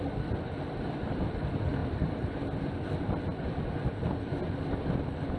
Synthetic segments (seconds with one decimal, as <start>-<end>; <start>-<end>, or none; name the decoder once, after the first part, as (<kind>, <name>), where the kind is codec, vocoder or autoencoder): 0.0-4.3 (vocoder, BigVGAN v2)